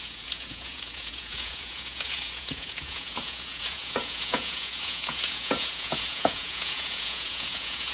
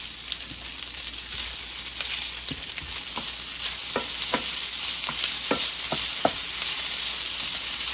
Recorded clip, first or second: second